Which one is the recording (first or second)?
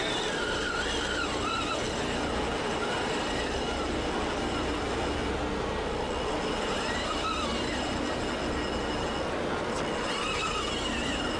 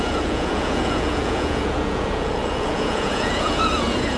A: first